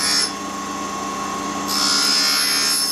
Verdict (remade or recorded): recorded